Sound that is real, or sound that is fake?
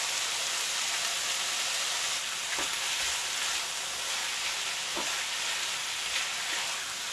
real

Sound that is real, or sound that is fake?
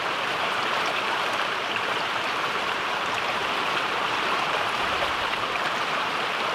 fake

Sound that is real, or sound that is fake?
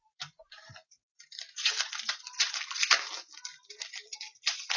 fake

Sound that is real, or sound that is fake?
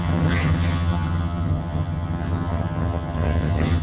fake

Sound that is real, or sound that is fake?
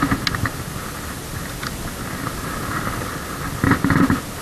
real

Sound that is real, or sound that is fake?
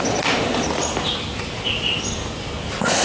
real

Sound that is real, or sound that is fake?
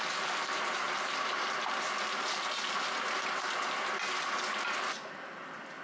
real